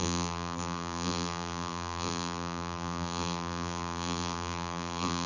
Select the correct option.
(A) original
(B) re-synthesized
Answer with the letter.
B